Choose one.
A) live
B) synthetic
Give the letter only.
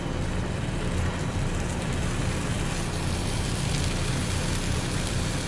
B